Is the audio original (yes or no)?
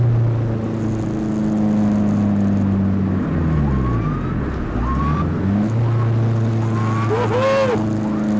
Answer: yes